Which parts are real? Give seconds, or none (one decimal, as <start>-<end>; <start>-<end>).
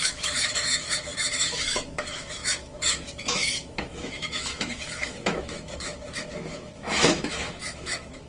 none